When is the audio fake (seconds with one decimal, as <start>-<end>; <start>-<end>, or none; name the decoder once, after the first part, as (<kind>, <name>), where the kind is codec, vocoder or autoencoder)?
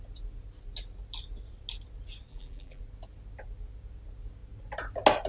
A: 2.3-2.8 (vocoder, BigVGAN v2)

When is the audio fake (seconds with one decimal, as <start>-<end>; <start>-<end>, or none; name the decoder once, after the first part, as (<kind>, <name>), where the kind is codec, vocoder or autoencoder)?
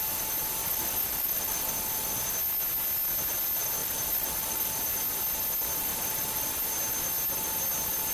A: 0.6-1.7 (vocoder, BigVGAN v2); 3.8-4.7; 5.9-6.5